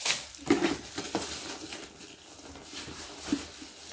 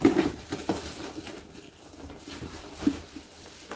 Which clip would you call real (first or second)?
first